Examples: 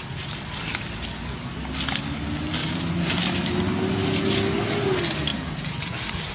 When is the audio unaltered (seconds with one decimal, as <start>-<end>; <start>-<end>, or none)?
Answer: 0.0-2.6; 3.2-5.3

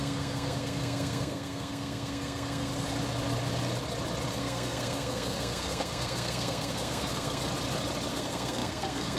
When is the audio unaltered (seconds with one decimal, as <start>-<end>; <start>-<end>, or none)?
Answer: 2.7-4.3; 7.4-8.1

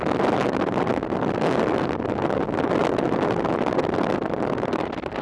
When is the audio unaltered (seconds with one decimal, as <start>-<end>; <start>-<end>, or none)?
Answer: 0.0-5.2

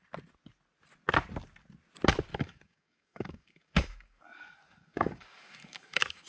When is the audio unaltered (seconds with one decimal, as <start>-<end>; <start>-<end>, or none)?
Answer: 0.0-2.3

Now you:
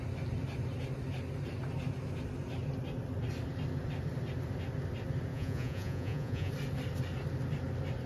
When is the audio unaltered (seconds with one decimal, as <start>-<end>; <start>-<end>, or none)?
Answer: 0.0-5.3; 6.5-8.1

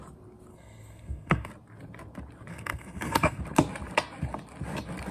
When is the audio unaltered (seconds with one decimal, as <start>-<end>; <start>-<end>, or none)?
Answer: 0.0-0.5; 1.5-2.5; 3.4-5.1

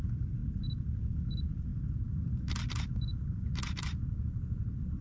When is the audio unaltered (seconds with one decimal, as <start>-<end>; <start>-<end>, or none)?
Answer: 0.0-5.0